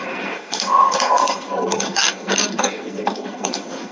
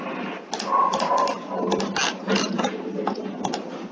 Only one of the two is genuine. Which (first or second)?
second